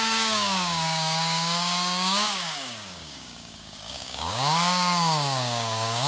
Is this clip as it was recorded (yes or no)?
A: no